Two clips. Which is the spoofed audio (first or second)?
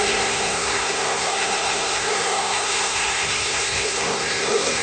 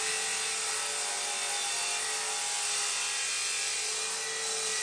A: first